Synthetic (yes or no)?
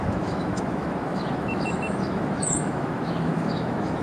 yes